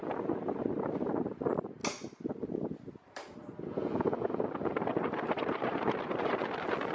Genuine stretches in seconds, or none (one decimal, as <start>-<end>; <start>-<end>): 0.0-4.9; 6.3-6.9